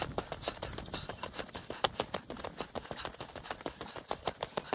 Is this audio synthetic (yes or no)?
no